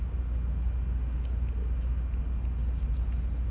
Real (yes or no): yes